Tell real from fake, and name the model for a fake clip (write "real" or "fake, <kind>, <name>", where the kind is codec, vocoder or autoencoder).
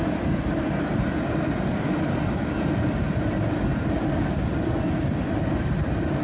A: real